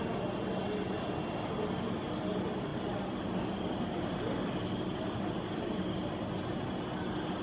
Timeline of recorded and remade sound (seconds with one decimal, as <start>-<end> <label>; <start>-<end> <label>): 0.0-2.7 recorded; 2.7-5.8 remade; 5.8-7.4 recorded